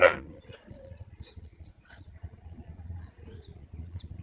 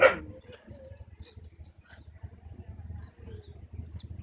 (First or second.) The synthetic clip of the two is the first